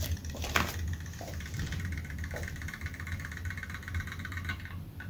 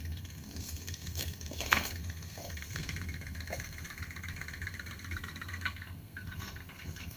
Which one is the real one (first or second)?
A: first